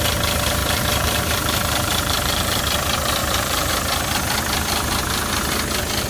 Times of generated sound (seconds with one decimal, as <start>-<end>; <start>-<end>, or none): 0.6-2.6; 3.2-3.7

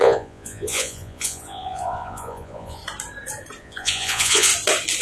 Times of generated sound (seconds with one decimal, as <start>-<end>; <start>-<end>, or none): 0.0-2.8; 3.6-4.5

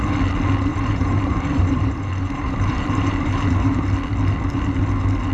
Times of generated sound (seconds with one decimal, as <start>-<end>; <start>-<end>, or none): 0.7-3.9

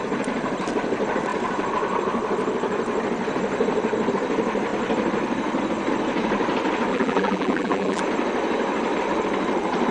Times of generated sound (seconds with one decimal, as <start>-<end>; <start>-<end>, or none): 6.9-8.0